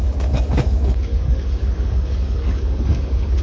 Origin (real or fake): fake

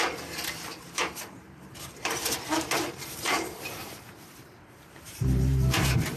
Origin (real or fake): fake